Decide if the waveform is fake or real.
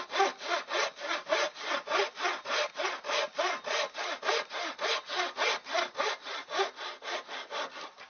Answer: real